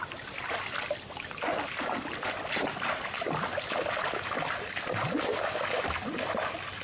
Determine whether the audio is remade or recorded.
recorded